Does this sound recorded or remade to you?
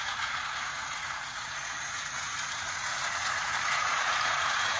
remade